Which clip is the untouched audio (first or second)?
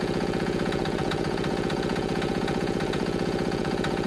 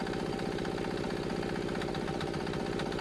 second